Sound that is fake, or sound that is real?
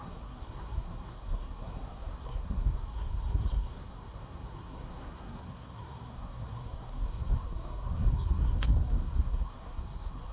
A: fake